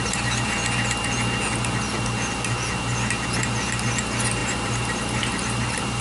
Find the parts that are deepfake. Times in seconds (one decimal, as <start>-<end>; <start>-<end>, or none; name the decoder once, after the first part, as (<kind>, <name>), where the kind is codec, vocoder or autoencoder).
0.0-0.6 (vocoder, BigVGAN v2); 3.6-6.0